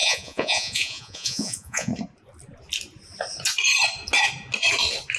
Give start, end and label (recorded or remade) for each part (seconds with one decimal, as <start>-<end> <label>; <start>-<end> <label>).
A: 0.0-1.9 remade; 1.9-5.2 recorded